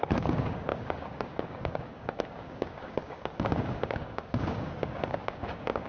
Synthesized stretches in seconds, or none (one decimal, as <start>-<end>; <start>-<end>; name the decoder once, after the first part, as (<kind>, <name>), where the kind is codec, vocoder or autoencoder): 0.0-5.9 (codec, DAC)